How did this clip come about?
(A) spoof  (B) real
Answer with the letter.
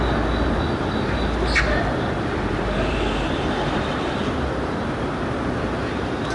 B